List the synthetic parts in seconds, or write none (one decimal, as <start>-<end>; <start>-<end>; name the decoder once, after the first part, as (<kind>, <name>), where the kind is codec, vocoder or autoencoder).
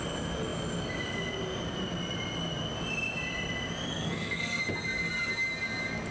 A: 3.9-4.6 (codec, SNAC)